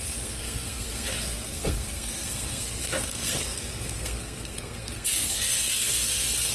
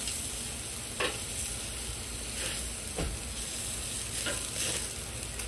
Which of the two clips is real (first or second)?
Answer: second